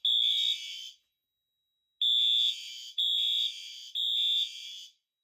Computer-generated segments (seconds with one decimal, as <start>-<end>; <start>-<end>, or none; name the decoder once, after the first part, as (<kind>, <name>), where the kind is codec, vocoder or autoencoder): none